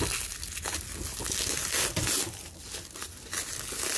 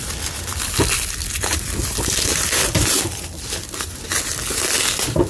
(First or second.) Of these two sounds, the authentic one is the first